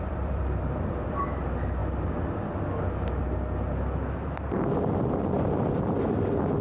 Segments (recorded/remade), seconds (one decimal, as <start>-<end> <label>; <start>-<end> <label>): 0.0-1.8 remade; 1.8-5.0 recorded; 5.0-6.6 remade